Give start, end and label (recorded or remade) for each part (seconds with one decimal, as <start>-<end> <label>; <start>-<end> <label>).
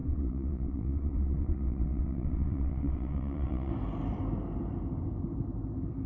0.0-3.7 remade; 3.7-6.1 recorded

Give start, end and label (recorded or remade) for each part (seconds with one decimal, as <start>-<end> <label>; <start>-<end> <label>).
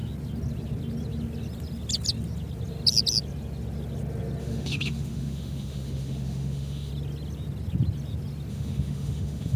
0.0-4.4 recorded; 4.4-6.9 remade; 6.9-8.5 recorded; 8.5-9.6 remade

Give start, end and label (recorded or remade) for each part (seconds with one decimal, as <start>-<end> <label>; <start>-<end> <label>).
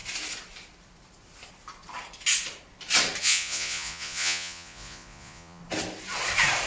0.0-3.2 recorded; 3.2-5.6 remade; 5.6-6.7 recorded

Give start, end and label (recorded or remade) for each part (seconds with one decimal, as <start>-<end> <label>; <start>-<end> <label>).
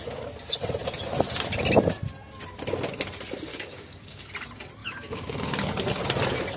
0.0-3.5 recorded; 3.5-4.3 remade; 4.3-4.8 recorded; 4.8-5.6 remade; 5.6-6.6 recorded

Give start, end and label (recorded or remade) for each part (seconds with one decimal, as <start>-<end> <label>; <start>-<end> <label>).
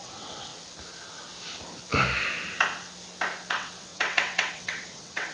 0.0-0.5 remade; 0.5-3.5 recorded; 3.5-5.3 remade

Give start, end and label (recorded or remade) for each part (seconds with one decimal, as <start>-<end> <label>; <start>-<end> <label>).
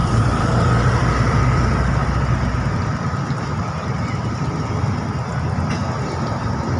0.0-4.1 remade; 4.1-6.8 recorded